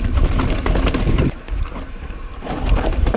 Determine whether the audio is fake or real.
fake